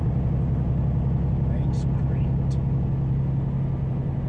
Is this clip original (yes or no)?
yes